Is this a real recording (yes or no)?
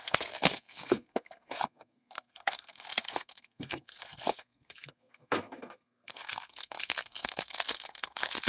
no